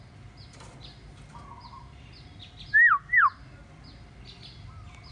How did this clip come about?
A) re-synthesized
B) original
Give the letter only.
B